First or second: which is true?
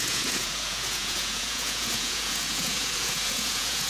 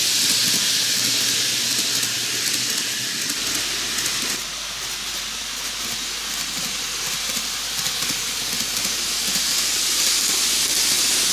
second